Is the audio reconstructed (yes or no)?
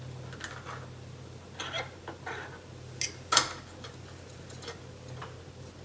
no